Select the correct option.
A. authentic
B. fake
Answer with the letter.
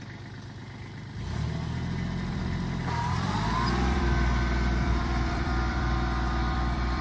B